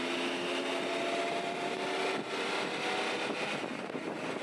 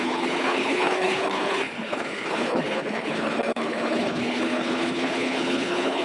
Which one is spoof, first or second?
second